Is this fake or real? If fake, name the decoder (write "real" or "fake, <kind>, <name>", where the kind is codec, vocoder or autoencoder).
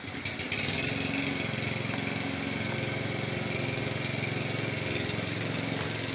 real